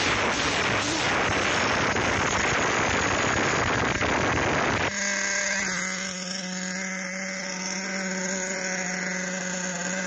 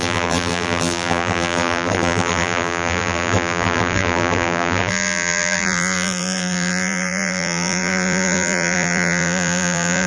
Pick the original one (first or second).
first